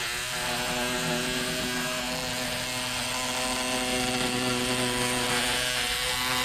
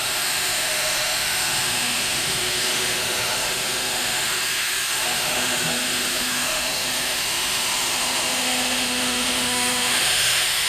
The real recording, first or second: first